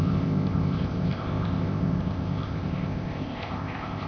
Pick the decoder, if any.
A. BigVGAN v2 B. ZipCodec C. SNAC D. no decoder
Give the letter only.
B